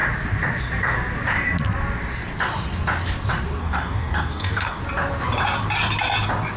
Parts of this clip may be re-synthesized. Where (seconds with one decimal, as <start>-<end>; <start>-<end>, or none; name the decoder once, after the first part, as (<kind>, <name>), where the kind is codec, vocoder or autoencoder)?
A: 3.6-4.8 (codec, DAC)